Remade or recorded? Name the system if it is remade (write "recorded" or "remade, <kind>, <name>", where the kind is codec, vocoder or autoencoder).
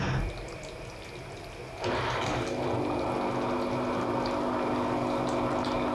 recorded